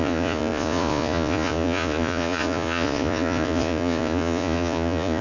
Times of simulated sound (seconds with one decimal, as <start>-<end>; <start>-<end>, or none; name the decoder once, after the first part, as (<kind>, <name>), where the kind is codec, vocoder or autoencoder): 0.0-5.2 (vocoder, Vocos)